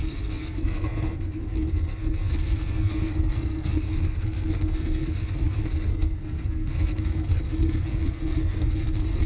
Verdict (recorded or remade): remade